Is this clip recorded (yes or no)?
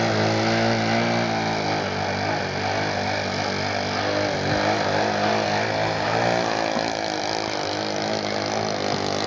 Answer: yes